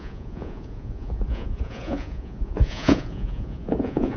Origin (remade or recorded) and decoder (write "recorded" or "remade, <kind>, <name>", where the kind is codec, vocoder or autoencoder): remade, vocoder, Vocos